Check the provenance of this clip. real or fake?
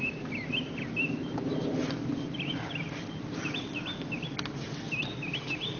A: real